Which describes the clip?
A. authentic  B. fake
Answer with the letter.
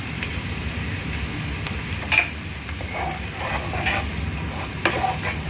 A